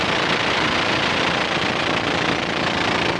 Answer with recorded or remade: remade